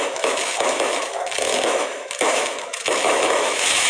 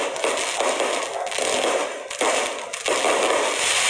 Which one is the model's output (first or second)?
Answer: first